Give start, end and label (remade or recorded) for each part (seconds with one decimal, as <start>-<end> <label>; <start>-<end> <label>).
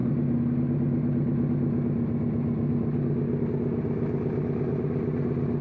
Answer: 0.0-5.6 recorded